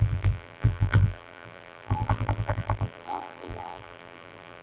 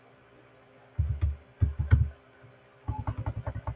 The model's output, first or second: first